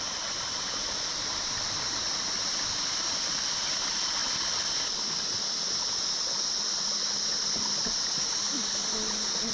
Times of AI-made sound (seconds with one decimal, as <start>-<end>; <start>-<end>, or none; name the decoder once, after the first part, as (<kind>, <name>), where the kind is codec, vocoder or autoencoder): none